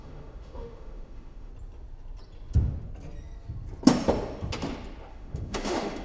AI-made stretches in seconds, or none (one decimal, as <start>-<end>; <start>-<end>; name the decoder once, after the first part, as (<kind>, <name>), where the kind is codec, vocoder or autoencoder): 0.0-1.5 (autoencoder, DAC-VAE); 5.1-6.0